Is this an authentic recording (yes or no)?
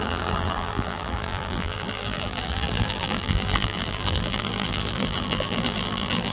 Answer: no